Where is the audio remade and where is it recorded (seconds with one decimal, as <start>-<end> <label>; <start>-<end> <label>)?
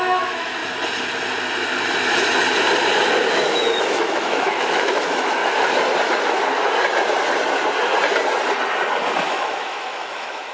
0.0-0.6 remade; 0.6-3.3 recorded; 3.3-5.4 remade; 5.4-9.3 recorded; 9.3-10.5 remade